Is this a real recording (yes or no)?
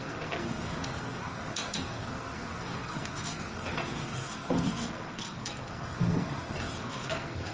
no